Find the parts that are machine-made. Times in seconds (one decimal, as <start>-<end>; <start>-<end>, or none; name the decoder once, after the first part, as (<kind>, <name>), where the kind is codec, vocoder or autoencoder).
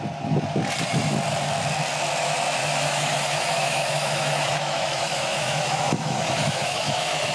2.6-7.3 (autoencoder, DAC-VAE)